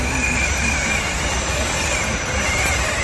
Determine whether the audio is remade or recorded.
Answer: recorded